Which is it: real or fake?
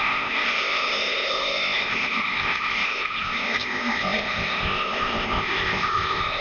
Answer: fake